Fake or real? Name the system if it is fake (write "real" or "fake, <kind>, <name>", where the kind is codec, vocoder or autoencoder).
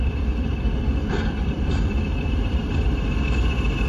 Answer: fake, vocoder, BigVGAN v2